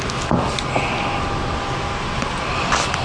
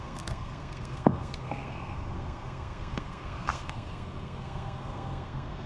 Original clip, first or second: first